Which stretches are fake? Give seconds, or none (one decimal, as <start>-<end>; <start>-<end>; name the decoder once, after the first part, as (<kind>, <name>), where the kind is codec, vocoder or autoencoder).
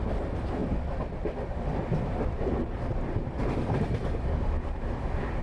none